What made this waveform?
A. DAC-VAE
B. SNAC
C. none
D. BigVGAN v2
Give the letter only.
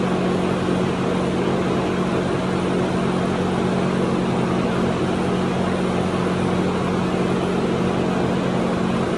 C